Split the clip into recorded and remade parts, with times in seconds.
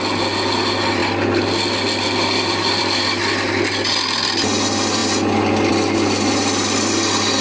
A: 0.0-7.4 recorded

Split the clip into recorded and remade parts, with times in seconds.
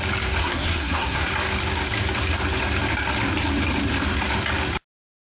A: 0.0-0.4 recorded; 0.4-1.3 remade; 1.3-5.3 recorded